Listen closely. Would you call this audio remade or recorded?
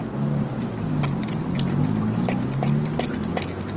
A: recorded